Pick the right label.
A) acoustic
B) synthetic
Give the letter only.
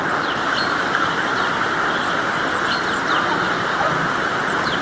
A